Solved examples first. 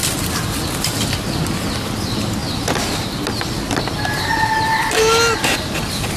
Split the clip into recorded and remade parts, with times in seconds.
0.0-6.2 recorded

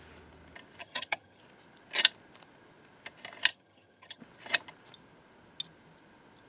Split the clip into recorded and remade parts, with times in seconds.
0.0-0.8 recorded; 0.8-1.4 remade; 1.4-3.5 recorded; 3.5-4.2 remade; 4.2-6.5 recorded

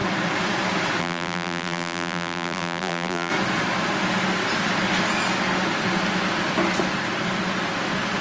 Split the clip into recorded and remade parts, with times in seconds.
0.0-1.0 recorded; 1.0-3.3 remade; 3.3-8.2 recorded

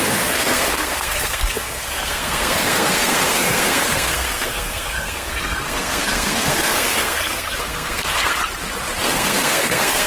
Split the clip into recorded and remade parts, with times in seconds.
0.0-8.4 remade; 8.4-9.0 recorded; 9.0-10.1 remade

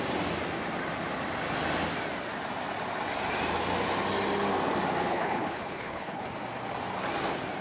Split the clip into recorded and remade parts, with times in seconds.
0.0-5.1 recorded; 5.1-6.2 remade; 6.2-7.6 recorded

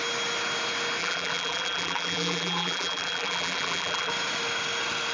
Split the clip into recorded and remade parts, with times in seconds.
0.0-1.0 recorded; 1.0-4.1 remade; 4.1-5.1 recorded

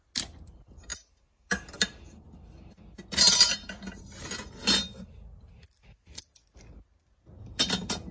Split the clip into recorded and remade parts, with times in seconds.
0.0-8.1 recorded

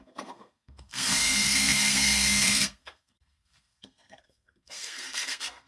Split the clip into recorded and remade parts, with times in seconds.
0.0-5.7 remade